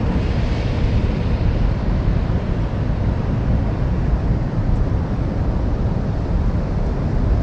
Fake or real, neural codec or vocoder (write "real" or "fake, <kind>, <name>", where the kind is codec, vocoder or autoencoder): fake, vocoder, BigVGAN v2